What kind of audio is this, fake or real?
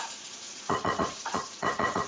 fake